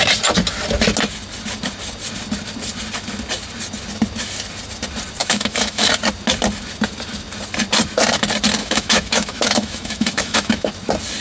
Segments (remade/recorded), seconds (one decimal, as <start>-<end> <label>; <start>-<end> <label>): 0.0-5.2 recorded; 5.2-5.9 remade; 5.9-8.6 recorded; 8.6-10.7 remade; 10.7-11.2 recorded